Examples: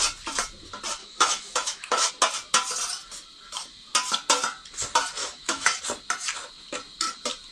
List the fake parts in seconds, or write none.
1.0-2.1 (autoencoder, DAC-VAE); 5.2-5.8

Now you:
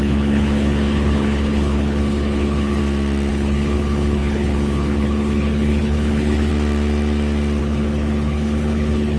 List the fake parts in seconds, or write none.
0.0-2.8 (codec, HILCodec); 3.3-6.5; 7.6-9.2

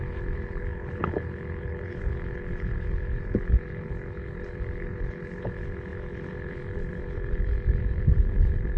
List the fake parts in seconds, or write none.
0.0-8.8 (codec, HILCodec)

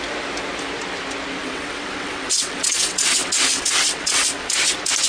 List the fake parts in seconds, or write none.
1.4-4.5 (vocoder, WaveNeXt)